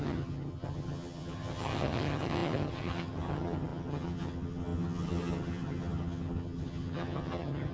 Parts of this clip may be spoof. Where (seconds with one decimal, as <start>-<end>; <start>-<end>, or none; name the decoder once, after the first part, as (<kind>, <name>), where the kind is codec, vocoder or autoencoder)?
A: 0.0-7.7 (vocoder, HiFi-GAN)